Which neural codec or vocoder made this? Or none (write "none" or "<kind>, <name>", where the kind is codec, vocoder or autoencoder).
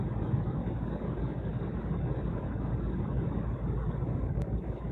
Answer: codec, DAC